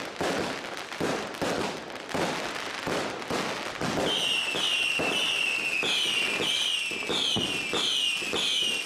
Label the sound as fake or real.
real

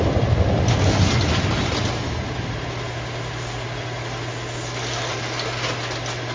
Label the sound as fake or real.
real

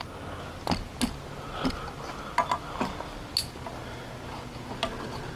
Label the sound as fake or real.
real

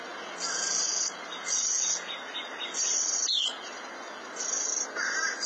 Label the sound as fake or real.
real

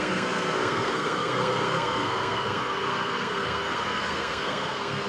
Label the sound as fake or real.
fake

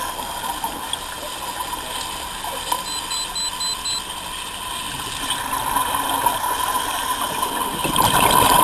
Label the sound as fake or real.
real